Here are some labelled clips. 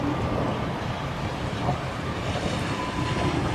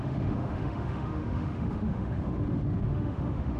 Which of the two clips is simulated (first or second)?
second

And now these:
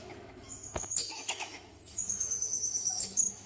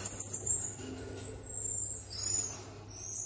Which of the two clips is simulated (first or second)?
first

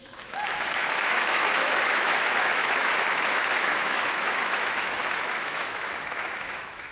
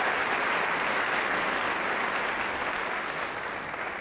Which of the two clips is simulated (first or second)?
first